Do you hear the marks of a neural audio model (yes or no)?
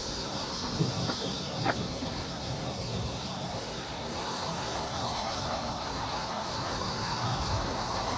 yes